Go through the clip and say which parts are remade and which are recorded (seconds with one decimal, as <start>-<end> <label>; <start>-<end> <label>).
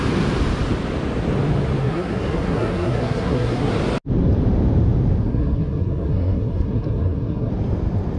0.0-1.8 recorded; 1.8-3.7 remade; 3.7-5.2 recorded; 5.2-7.5 remade; 7.5-8.2 recorded